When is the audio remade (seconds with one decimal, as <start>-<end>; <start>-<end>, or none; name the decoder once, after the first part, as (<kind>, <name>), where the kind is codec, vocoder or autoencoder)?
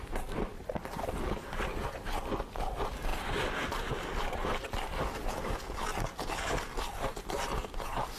none